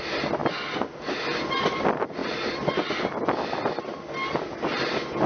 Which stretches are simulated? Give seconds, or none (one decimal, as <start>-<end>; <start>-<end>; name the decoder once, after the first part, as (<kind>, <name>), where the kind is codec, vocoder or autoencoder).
none